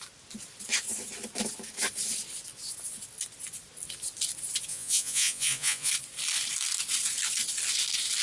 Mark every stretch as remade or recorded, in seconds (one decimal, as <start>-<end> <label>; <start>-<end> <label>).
0.0-4.7 recorded; 4.7-5.9 remade; 5.9-8.2 recorded